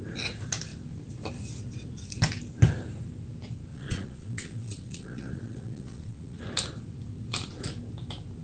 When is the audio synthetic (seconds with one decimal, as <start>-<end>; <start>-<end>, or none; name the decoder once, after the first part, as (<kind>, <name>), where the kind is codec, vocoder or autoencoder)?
3.7-6.4 (vocoder, Vocos)